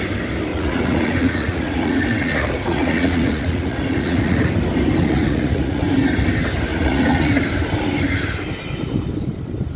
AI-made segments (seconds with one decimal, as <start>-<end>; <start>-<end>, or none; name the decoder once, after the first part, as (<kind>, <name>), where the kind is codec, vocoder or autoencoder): 0.5-4.5 (vocoder, Vocos); 5.0-5.8; 6.7-7.3

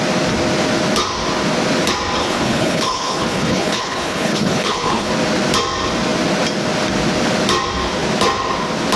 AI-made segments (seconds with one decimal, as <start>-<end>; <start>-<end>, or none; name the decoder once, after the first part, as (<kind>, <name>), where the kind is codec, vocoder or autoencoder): 2.2-5.1 (codec, HILCodec)

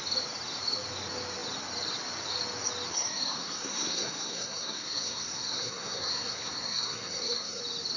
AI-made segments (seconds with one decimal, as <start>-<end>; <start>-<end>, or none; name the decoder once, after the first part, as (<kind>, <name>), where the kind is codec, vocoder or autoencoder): 2.9-7.6 (codec, SNAC)